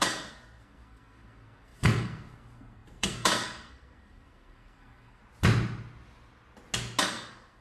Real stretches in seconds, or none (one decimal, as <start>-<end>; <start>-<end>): 5.2-7.0

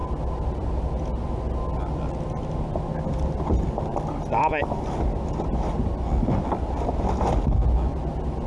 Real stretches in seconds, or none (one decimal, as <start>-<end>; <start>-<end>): 0.0-8.5

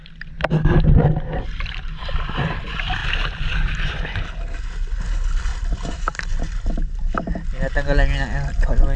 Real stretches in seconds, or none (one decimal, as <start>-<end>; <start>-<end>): 0.0-3.0; 4.3-5.5; 6.3-9.0

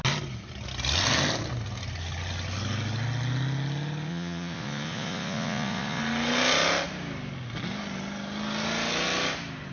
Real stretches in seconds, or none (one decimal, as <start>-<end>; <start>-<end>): 0.0-4.1; 6.0-9.7

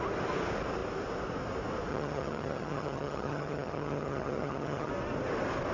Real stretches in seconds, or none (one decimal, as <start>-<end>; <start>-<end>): 0.0-1.9; 4.9-5.7

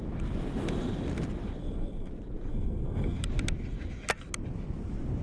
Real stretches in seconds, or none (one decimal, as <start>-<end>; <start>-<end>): 0.0-1.6; 2.1-2.5; 3.2-5.2

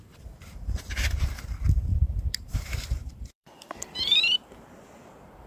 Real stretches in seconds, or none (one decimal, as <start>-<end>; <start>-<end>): 0.0-1.9; 4.5-5.5